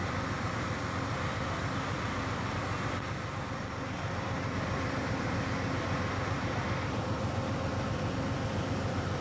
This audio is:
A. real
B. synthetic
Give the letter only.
A